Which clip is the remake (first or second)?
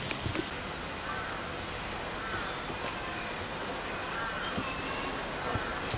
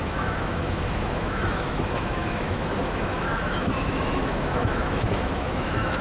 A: second